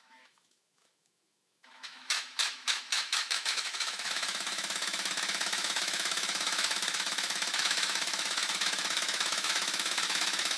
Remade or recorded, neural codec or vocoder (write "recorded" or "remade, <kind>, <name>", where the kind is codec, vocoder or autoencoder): remade, autoencoder, DAC-VAE